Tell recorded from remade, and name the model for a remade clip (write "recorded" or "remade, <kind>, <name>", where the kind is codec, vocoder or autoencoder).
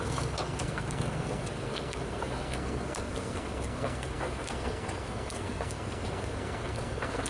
remade, codec, SNAC